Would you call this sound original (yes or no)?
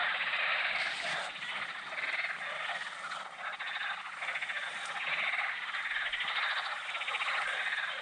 yes